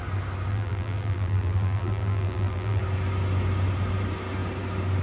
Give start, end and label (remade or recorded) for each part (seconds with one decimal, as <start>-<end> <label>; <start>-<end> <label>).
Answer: 0.0-0.5 recorded; 0.5-2.8 remade; 2.8-5.0 recorded